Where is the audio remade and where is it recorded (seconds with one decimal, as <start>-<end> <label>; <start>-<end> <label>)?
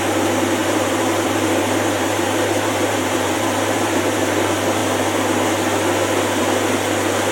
0.0-0.6 recorded; 0.6-4.2 remade; 4.2-7.3 recorded